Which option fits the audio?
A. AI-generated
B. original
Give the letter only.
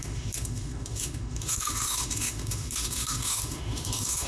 A